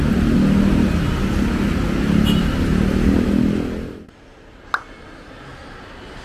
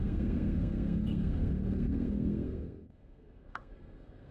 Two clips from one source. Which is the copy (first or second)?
second